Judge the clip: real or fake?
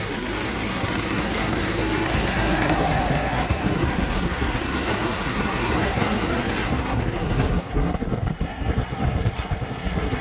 fake